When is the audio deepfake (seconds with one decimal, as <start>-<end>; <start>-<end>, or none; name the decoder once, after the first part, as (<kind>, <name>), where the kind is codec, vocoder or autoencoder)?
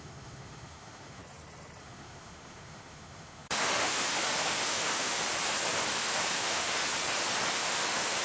0.0-1.2 (autoencoder, DAC-VAE); 1.8-5.2; 6.0-6.8; 7.5-8.2